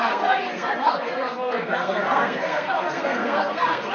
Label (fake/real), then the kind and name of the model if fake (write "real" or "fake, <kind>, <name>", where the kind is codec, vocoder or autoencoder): fake, codec, SNAC